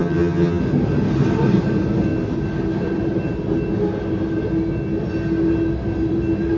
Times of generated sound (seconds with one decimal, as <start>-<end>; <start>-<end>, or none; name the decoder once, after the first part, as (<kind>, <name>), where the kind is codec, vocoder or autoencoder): 0.0-0.6 (vocoder, HiFi-GAN)